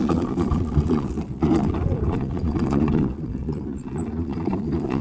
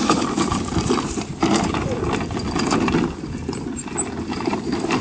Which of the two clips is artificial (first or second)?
first